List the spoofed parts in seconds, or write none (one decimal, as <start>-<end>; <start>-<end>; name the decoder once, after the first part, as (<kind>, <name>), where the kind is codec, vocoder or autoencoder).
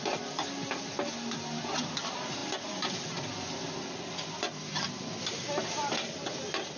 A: none